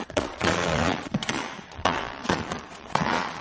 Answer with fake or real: fake